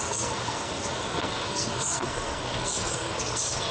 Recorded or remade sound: remade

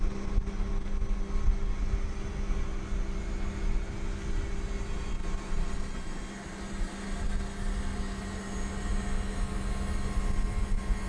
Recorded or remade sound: recorded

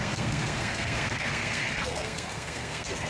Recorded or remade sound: remade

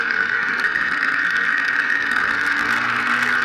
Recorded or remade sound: remade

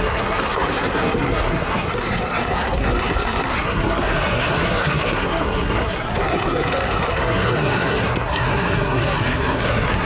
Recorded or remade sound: remade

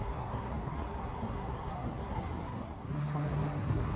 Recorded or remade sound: remade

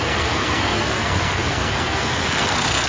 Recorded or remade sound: remade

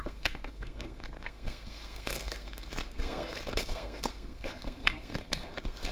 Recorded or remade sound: remade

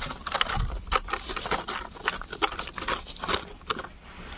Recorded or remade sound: recorded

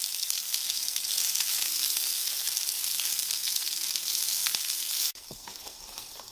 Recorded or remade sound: remade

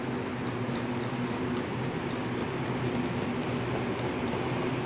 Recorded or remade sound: recorded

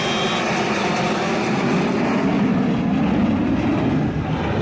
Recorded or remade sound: recorded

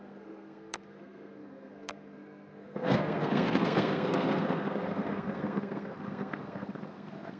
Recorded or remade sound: remade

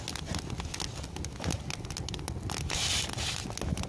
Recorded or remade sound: recorded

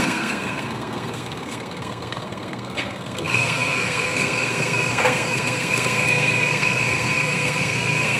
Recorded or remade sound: remade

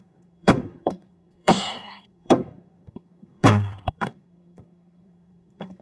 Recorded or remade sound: remade